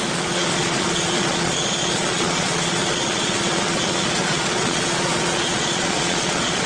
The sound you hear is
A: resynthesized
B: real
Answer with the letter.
A